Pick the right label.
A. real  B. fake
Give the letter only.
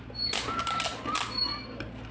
A